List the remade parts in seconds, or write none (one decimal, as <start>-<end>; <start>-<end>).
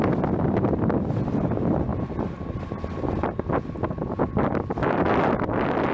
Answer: none